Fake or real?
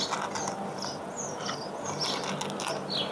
real